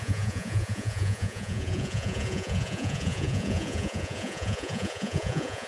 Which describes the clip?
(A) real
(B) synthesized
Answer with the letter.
B